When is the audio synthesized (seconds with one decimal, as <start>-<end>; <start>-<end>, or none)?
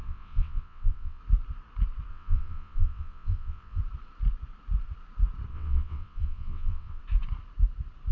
0.0-1.2; 2.1-3.8; 5.5-7.0